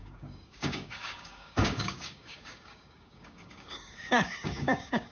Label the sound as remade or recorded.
remade